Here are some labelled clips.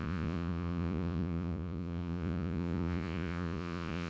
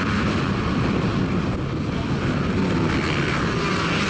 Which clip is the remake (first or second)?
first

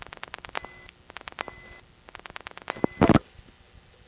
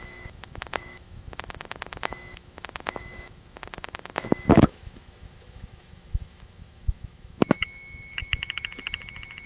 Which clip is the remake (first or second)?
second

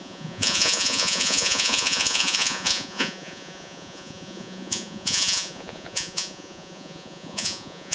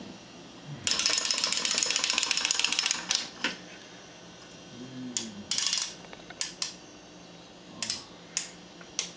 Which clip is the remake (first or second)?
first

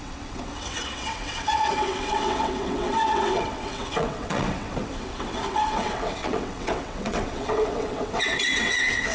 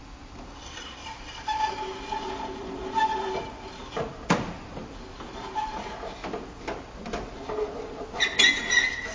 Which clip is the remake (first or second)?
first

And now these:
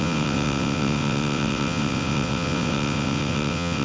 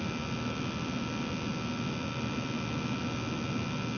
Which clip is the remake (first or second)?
first